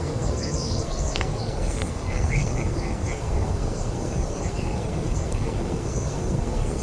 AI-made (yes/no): yes